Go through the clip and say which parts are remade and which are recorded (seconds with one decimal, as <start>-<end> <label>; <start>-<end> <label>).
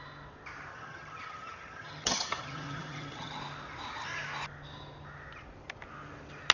0.0-0.7 recorded; 0.7-3.4 remade; 3.4-6.5 recorded